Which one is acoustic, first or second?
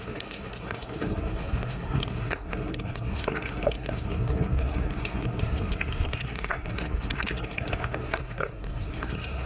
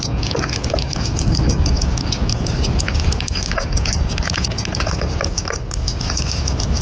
second